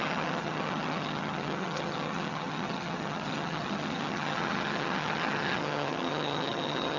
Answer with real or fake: fake